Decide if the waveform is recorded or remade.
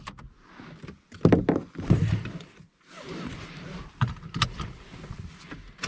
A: recorded